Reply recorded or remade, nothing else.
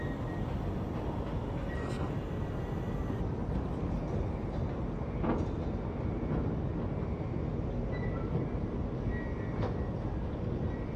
recorded